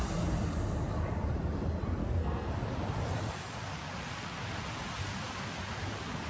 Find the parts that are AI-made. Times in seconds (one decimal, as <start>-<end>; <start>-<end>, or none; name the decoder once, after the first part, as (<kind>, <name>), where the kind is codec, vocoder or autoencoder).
2.0-2.5 (codec, SNAC)